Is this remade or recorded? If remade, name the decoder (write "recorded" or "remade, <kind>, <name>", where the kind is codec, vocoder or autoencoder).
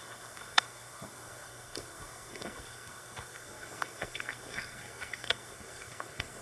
remade, codec, SNAC